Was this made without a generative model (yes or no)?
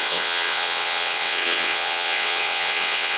no